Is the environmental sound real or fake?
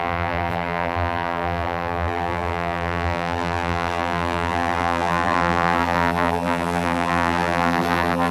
fake